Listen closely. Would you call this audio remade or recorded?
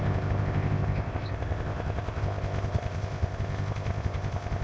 remade